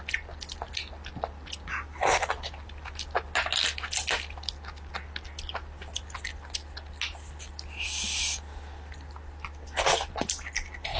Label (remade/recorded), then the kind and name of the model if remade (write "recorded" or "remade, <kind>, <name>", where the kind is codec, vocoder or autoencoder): recorded